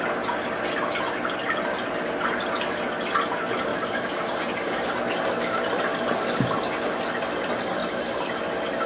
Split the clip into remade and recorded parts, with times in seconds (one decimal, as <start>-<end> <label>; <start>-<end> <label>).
0.0-3.7 recorded; 3.7-4.8 remade; 4.8-7.8 recorded; 7.8-8.4 remade; 8.4-8.9 recorded